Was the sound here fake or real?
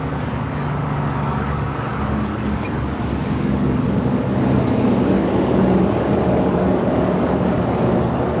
fake